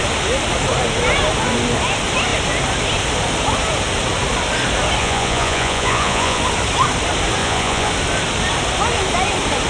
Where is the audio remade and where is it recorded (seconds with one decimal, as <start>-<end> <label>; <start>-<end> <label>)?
0.0-5.0 recorded; 5.0-6.4 remade; 6.4-7.4 recorded; 7.4-7.9 remade; 7.9-9.7 recorded